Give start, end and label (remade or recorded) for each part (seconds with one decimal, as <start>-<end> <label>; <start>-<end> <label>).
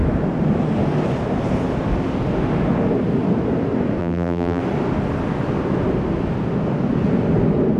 0.0-4.0 recorded; 4.0-4.6 remade; 4.6-7.8 recorded